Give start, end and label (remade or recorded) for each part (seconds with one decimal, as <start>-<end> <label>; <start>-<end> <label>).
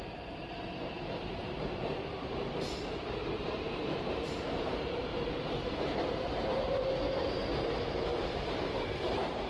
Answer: 0.0-5.1 remade; 5.1-5.7 recorded; 5.7-9.5 remade